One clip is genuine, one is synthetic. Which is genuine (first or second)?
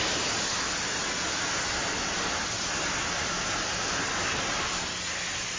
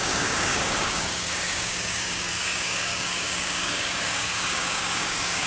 first